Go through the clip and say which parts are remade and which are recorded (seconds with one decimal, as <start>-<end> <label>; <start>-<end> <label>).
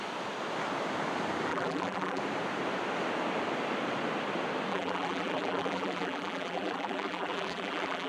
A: 0.0-1.5 recorded; 1.5-2.2 remade; 2.2-4.7 recorded; 4.7-8.1 remade